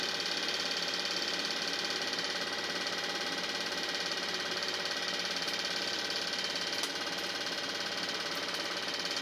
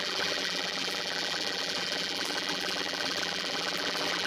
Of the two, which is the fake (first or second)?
second